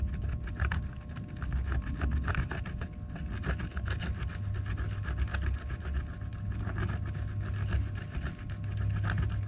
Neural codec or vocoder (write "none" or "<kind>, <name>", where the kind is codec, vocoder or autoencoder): none